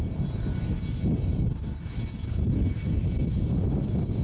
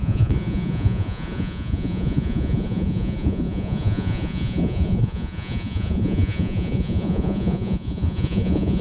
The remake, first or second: second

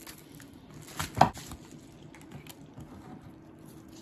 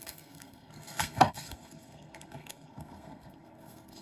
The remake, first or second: second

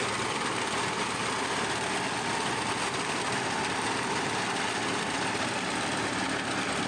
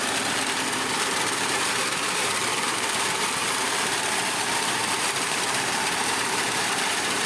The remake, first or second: second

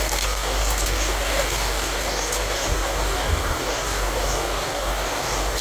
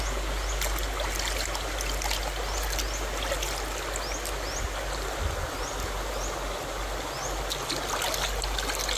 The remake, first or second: first